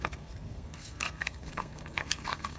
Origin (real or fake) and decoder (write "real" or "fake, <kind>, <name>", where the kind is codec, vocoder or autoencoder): fake, codec, SNAC